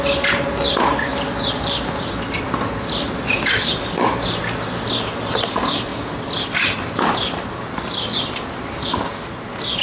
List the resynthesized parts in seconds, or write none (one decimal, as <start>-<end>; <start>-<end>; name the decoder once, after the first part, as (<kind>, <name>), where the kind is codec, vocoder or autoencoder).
1.1-3.9 (vocoder, BigVGAN v2); 5.9-8.9